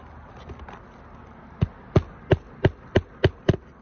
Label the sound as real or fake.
real